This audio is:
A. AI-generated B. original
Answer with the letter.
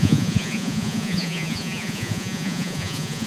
A